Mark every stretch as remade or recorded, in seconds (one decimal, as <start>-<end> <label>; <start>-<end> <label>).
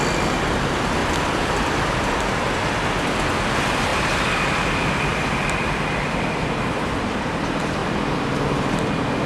0.0-1.0 recorded; 1.0-2.2 remade; 2.2-3.9 recorded; 3.9-7.0 remade; 7.0-9.3 recorded